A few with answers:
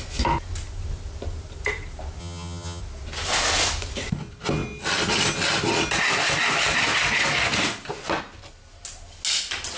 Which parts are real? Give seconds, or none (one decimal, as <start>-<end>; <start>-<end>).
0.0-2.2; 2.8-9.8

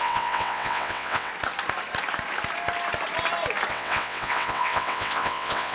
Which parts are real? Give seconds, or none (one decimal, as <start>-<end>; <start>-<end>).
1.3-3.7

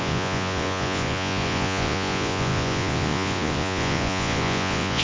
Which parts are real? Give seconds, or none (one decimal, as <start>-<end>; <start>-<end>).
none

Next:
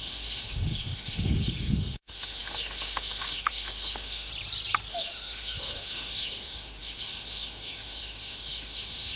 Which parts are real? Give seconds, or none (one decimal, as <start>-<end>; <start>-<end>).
4.3-4.9

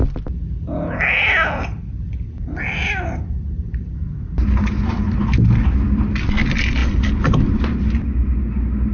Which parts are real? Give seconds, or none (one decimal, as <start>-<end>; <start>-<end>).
0.0-8.9

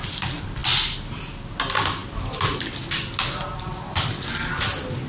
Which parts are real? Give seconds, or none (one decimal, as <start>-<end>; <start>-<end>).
0.0-5.1